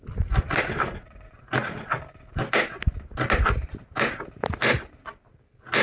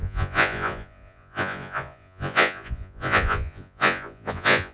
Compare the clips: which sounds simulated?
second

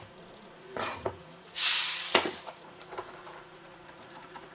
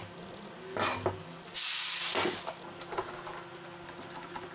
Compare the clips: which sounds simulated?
first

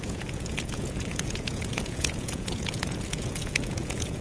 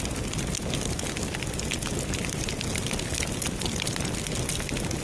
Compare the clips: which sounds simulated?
first